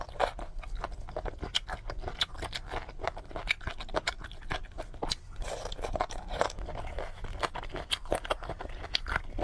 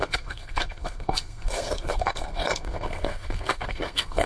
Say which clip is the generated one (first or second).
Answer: second